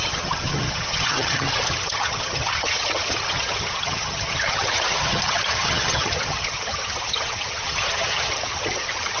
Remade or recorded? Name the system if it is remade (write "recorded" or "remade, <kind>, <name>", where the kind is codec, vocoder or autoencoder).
remade, vocoder, HiFi-GAN